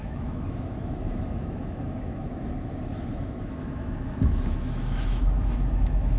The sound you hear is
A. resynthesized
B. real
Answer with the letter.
A